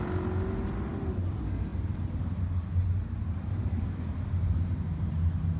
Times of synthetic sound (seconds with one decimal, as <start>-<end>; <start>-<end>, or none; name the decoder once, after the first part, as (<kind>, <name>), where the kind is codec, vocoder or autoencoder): none